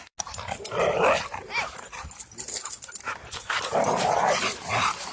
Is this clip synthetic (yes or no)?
no